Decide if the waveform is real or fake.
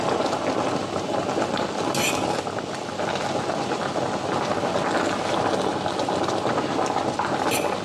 real